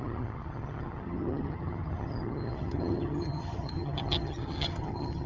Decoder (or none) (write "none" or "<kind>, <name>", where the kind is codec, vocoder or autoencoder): vocoder, HiFi-GAN